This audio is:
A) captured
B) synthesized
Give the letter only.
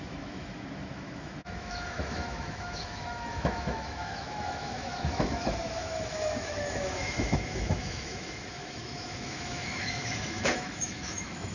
B